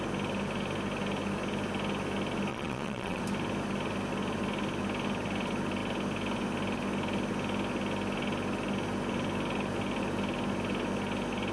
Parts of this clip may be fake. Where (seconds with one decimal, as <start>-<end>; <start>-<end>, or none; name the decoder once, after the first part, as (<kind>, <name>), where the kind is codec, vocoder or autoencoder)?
2.5-3.2 (vocoder, Vocos)

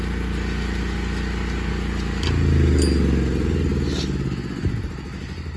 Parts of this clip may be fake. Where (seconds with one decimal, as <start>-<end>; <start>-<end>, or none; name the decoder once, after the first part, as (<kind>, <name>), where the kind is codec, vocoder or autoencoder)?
none

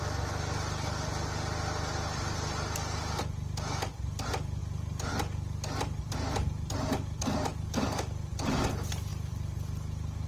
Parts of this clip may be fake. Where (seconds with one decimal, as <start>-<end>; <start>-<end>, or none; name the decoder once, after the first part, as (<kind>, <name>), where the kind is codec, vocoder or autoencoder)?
none

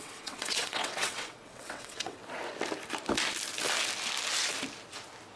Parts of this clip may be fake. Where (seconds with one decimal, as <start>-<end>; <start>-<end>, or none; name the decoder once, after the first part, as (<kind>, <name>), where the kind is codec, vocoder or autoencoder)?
0.0-2.2 (vocoder, WaveNeXt)

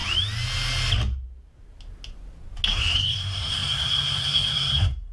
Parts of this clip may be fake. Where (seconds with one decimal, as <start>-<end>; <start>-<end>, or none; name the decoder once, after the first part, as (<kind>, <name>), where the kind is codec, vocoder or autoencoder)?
2.7-5.1 (codec, SNAC)

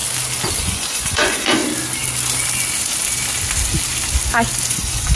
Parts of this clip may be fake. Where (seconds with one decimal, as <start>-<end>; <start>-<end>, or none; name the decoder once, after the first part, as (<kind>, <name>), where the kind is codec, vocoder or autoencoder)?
0.6-1.6 (vocoder, Vocos); 4.7-5.2